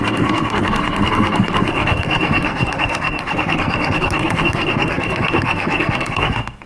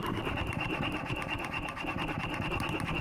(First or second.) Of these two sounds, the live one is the second